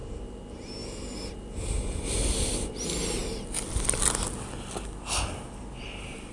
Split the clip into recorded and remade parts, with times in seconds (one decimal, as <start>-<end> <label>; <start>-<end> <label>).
0.0-6.3 recorded